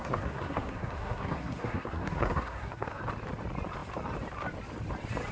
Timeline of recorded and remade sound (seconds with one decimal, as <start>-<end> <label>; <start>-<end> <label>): 0.0-3.0 remade; 3.0-5.3 recorded